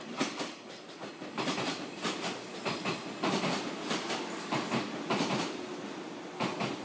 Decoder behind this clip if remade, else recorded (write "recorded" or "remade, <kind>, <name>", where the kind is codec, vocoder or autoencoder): recorded